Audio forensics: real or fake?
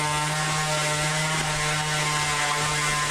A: real